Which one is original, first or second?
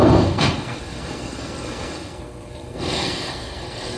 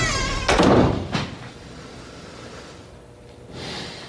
second